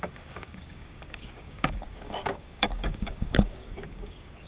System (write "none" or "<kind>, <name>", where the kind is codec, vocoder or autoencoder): codec, DAC